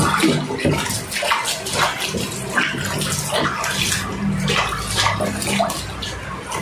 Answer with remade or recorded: recorded